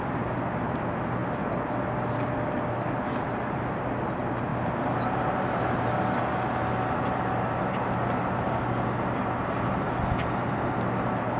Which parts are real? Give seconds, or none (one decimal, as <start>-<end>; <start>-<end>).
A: 0.0-11.4